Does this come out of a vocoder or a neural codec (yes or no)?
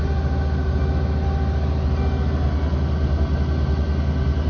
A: no